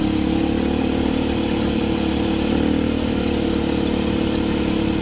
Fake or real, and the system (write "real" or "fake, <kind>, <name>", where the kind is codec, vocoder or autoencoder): real